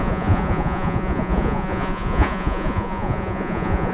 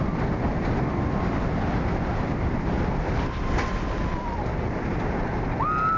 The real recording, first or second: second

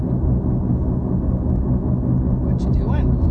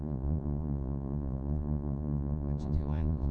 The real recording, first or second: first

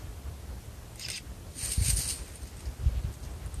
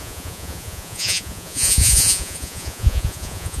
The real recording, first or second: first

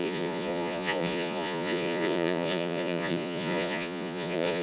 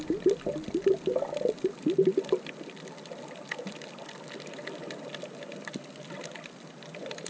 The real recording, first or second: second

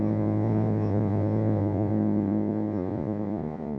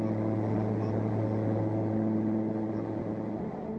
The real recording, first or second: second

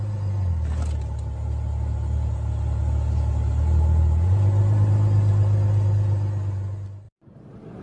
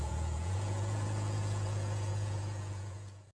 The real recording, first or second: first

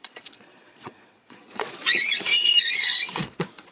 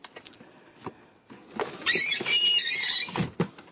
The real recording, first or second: second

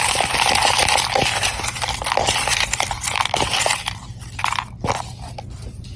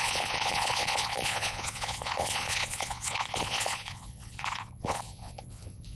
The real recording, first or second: first